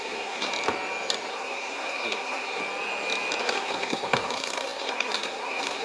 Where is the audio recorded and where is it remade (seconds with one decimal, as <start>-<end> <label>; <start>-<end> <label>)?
0.0-0.5 remade; 0.5-1.3 recorded; 1.3-2.6 remade; 2.6-3.4 recorded; 3.4-5.8 remade